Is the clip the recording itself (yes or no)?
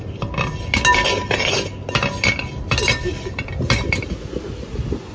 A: yes